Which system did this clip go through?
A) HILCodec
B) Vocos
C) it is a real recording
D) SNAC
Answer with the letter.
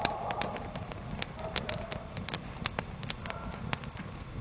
C